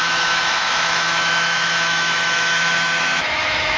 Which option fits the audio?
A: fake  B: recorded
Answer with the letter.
A